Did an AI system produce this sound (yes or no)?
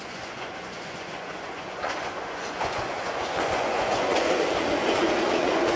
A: yes